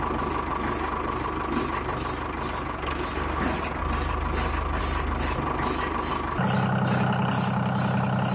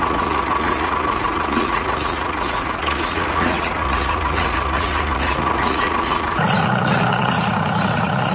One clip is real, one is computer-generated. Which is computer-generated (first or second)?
second